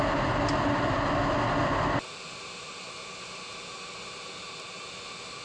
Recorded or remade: recorded